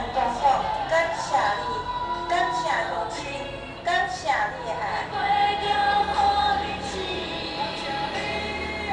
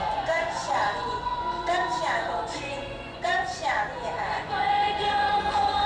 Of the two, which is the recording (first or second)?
first